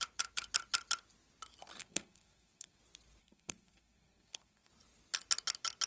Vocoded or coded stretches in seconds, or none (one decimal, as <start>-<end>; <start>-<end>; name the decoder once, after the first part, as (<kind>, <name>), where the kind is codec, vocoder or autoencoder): 1.8-2.8 (codec, SNAC); 3.2-4.7